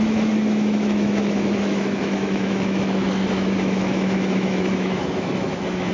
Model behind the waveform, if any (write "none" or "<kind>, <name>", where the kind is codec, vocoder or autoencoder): autoencoder, DAC-VAE